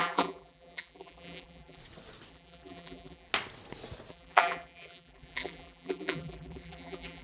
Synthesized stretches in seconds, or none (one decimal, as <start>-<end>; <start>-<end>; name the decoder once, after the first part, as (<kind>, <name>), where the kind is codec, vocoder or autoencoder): 0.0-1.8 (vocoder, BigVGAN v2); 2.3-3.3; 4.1-7.2